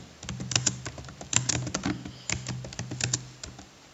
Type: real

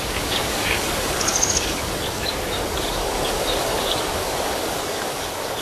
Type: fake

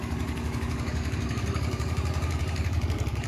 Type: fake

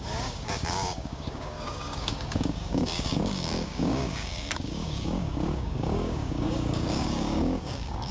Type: fake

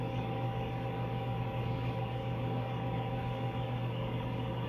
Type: fake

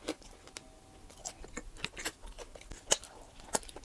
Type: real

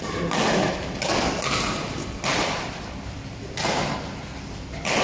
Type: real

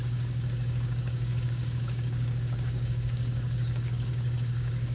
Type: fake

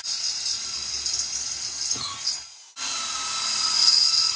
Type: real